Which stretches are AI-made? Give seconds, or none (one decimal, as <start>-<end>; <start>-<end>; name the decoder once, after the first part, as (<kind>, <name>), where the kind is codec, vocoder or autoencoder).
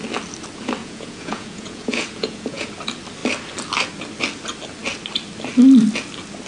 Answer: 0.8-2.7 (vocoder, Vocos)